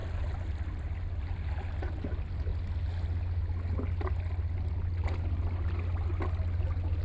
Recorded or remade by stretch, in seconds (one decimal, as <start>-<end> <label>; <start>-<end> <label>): 0.0-7.0 recorded